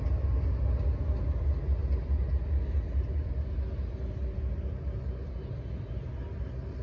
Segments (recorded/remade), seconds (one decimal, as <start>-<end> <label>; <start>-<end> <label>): 0.0-6.8 recorded